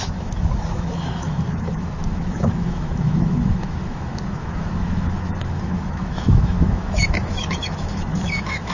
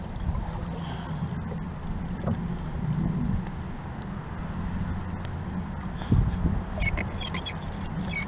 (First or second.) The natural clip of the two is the second